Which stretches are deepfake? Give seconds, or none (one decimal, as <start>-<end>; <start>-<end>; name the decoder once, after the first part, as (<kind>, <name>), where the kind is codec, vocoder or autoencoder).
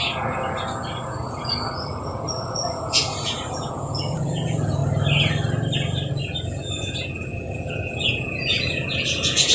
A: 0.0-4.8 (vocoder, Vocos); 6.1-9.5